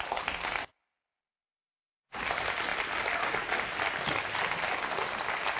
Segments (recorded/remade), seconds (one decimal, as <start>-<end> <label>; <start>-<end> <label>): 0.0-5.6 recorded